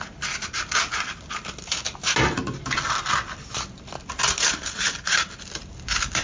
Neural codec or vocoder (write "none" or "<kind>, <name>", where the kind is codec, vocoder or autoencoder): none